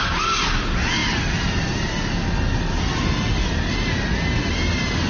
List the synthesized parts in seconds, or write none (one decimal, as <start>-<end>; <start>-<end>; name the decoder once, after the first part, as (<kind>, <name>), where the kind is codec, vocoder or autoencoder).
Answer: none